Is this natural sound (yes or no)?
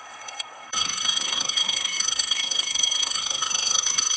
no